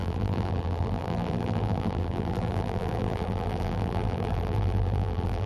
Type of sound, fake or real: fake